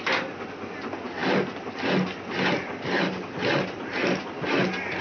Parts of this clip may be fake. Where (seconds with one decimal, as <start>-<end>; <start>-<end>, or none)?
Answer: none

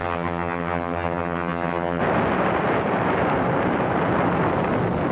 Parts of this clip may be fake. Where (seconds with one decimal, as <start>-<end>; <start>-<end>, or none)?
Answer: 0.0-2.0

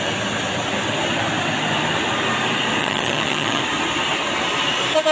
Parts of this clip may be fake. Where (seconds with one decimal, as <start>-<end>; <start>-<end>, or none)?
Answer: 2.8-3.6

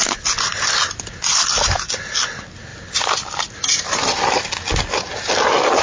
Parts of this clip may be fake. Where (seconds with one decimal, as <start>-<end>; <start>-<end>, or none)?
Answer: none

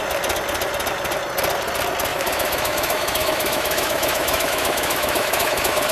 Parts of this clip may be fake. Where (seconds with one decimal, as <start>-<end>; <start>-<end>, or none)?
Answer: 2.1-5.9

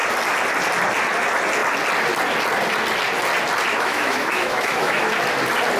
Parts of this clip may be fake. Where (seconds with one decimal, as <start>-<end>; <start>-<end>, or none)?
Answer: 3.7-5.1